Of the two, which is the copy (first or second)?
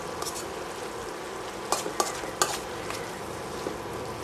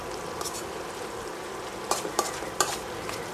second